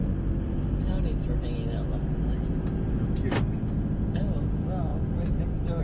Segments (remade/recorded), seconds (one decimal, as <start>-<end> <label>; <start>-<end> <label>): 0.0-5.8 recorded